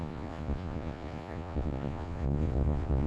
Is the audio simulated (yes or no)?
yes